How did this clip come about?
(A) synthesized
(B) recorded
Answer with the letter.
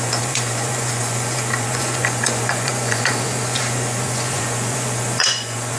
A